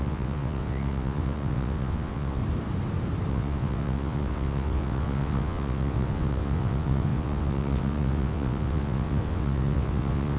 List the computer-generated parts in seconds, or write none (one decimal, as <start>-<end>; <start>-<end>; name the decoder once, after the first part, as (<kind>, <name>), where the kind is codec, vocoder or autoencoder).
0.0-2.4 (vocoder, WaveNeXt); 3.3-10.4